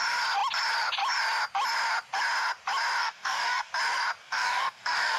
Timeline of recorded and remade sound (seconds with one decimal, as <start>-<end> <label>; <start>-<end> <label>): 0.0-3.0 recorded; 3.0-3.7 remade; 3.7-4.2 recorded; 4.2-5.2 remade